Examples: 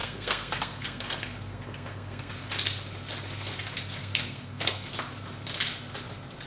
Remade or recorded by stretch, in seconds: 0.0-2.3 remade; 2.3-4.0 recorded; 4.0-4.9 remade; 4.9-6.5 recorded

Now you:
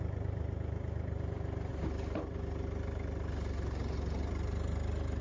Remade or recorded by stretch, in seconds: 0.0-5.2 recorded

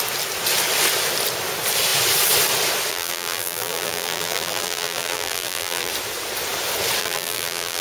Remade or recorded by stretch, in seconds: 0.0-2.9 recorded; 2.9-5.9 remade; 5.9-7.0 recorded; 7.0-7.8 remade

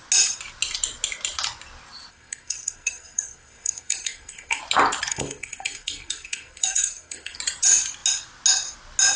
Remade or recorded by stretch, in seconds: 0.0-2.1 recorded; 2.1-4.6 remade; 4.6-5.1 recorded; 5.1-7.4 remade; 7.4-9.2 recorded

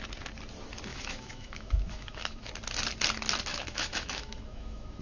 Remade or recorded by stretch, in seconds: 0.0-0.9 recorded; 0.9-2.5 remade; 2.5-3.5 recorded; 3.5-5.0 remade

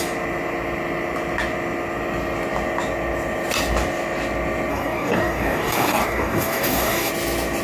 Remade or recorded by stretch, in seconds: 0.0-4.7 recorded; 4.7-7.1 remade; 7.1-7.6 recorded

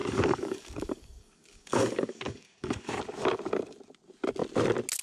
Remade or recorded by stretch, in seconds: 0.0-3.0 remade; 3.0-5.0 recorded